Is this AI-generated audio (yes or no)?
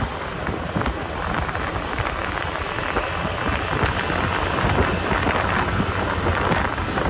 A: no